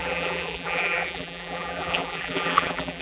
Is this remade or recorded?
remade